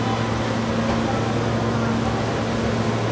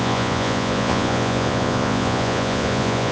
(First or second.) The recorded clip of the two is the first